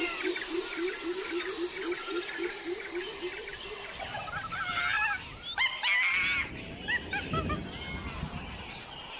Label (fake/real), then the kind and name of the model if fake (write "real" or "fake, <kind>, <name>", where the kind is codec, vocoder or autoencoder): real